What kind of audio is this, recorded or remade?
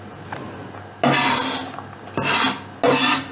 recorded